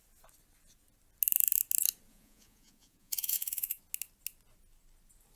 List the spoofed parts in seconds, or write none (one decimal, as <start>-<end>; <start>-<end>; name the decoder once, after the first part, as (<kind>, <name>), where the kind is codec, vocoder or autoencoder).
2.1-3.8 (vocoder, Vocos)